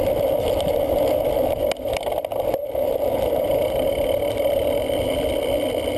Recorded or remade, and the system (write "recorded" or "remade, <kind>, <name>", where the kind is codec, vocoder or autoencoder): recorded